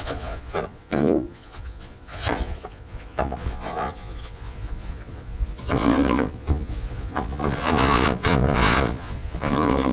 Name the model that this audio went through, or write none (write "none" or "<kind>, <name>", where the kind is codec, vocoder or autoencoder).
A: vocoder, Vocos